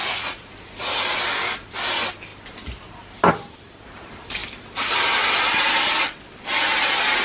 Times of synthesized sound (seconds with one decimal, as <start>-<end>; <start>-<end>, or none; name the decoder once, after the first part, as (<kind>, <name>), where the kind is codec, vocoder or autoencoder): 0.0-0.5 (vocoder, Vocos)